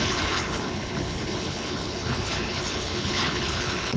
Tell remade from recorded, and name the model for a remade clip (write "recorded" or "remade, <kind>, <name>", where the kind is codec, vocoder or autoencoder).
remade, codec, HILCodec